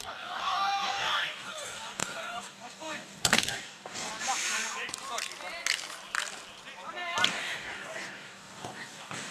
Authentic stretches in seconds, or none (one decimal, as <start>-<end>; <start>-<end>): 4.1-7.3